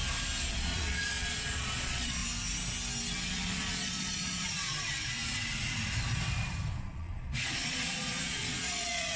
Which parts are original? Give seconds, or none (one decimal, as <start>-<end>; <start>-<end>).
0.0-0.5; 2.2-3.3; 4.7-6.8